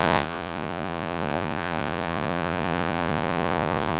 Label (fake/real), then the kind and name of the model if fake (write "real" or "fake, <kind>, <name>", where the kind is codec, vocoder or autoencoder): fake, vocoder, Vocos